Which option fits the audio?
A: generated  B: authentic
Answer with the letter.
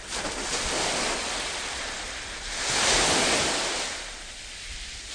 B